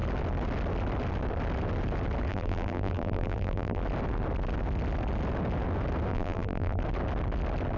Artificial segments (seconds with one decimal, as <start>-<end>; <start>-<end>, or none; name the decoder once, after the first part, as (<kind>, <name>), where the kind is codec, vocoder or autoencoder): 2.3-3.8 (vocoder, BigVGAN v2); 6.1-6.8